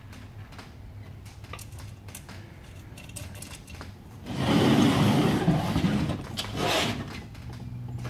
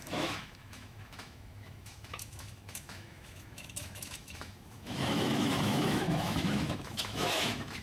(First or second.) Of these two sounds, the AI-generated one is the second